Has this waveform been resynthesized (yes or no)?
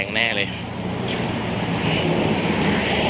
yes